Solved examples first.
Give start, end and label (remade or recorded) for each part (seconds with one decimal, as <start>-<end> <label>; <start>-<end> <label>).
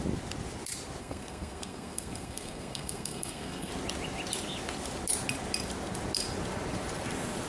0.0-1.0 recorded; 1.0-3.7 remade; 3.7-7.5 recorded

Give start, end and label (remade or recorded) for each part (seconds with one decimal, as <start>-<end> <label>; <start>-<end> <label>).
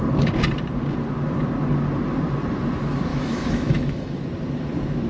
0.0-3.1 recorded; 3.1-4.2 remade; 4.2-5.1 recorded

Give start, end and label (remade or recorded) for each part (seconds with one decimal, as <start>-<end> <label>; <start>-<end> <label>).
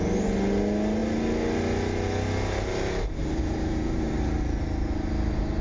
0.0-3.2 recorded; 3.2-4.4 remade; 4.4-5.6 recorded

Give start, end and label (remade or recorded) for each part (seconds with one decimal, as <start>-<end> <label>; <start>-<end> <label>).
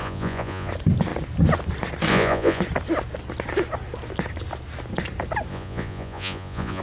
0.0-0.7 remade; 0.7-2.1 recorded; 2.1-2.6 remade; 2.6-5.5 recorded; 5.5-6.8 remade